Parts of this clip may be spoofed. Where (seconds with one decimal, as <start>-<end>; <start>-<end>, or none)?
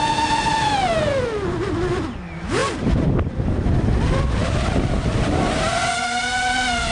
none